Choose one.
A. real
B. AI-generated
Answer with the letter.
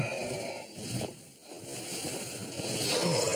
A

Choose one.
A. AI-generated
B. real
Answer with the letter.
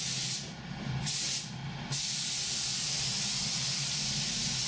B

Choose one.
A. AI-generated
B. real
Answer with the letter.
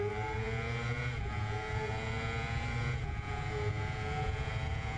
A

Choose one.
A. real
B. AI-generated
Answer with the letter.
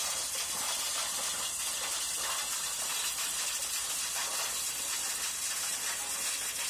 A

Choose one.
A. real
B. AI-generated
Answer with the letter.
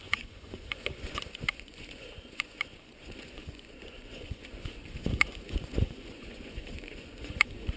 B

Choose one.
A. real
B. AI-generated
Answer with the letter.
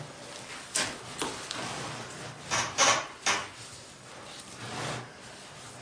A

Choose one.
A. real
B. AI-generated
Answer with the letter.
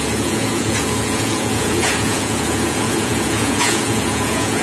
B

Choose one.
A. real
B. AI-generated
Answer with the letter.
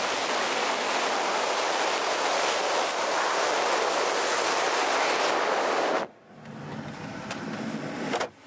A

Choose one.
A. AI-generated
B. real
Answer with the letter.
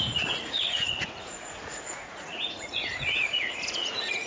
A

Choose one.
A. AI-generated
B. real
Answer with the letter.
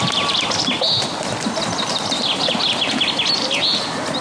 B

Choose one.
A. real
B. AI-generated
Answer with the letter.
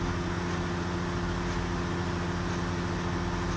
A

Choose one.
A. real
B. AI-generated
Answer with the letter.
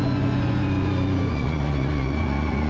B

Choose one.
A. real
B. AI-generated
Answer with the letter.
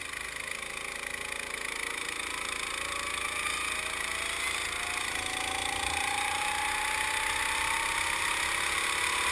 A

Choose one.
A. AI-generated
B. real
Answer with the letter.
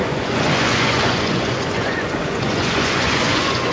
A